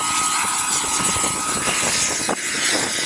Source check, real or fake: real